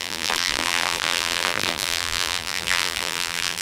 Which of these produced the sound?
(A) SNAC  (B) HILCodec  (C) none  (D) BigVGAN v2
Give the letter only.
D